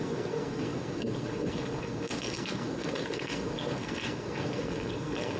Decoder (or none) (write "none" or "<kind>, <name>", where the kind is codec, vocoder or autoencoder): codec, SNAC